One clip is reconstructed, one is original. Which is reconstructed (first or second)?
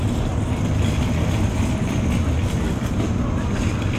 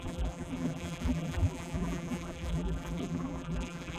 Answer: second